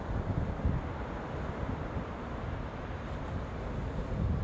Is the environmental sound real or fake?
real